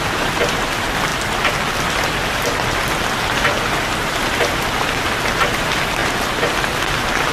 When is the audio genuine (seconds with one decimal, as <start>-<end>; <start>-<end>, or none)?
0.0-7.3